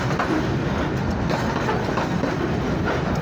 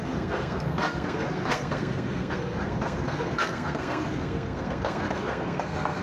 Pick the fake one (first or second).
second